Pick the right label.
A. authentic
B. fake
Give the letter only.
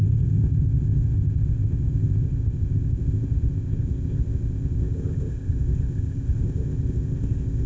B